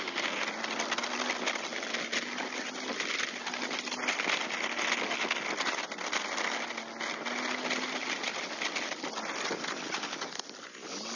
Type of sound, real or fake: real